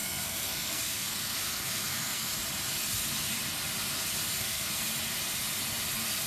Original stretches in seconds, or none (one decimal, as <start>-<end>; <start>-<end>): 2.3-4.4; 4.9-6.3